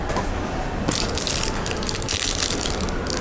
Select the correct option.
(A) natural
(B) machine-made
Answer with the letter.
A